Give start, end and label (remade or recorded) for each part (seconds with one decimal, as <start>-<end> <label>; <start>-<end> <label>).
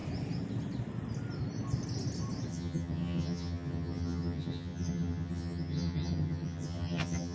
0.0-2.5 recorded; 2.5-7.3 remade